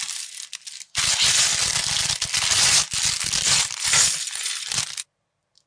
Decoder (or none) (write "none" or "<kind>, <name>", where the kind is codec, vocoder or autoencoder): none